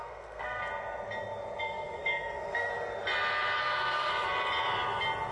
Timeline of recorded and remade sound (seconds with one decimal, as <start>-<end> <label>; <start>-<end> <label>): 0.0-0.6 remade; 0.6-1.6 recorded; 1.6-2.7 remade; 2.7-3.6 recorded; 3.6-4.1 remade; 4.1-5.3 recorded